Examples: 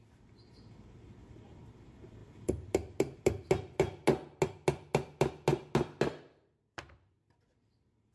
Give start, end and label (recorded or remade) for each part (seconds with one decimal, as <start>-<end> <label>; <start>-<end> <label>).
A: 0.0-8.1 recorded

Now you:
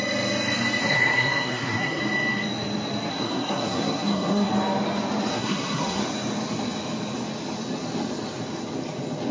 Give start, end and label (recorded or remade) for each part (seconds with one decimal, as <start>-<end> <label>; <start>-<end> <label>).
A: 0.0-0.8 recorded; 0.8-2.0 remade; 2.0-3.1 recorded; 3.1-4.5 remade; 4.5-5.3 recorded; 5.3-6.0 remade; 6.0-9.3 recorded

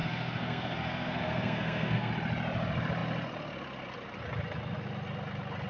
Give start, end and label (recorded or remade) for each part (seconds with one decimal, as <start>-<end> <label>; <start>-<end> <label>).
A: 0.0-2.1 remade; 2.1-5.7 recorded

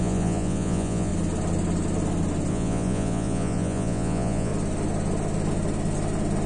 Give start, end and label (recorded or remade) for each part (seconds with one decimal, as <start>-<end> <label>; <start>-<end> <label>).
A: 0.0-1.1 remade; 1.1-2.5 recorded; 2.5-4.5 remade; 4.5-6.5 recorded

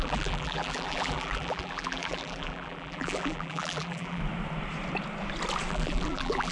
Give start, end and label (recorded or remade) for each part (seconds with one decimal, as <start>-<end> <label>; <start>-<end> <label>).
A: 0.0-4.2 remade; 4.2-5.7 recorded; 5.7-6.5 remade